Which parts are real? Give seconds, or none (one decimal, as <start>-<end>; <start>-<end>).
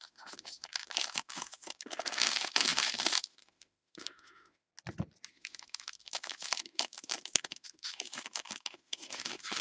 4.7-5.3